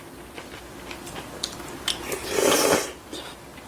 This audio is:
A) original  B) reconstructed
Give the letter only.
A